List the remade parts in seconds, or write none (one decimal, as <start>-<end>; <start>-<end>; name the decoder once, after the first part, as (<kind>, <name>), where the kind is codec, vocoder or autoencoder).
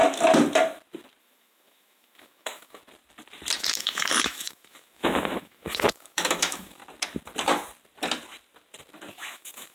1.2-2.8 (autoencoder, DAC-VAE); 3.6-6.8; 9.1-9.7